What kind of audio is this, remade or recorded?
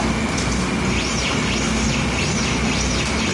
recorded